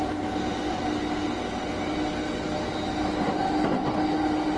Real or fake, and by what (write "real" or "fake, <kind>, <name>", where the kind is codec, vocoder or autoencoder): real